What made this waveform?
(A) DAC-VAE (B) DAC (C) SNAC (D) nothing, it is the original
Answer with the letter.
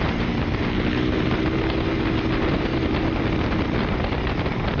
D